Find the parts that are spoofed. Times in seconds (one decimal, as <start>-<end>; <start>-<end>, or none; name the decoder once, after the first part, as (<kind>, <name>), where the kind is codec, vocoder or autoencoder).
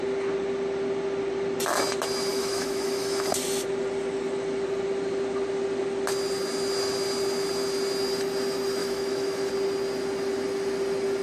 2.3-3.3 (autoencoder, DAC-VAE); 8.8-9.5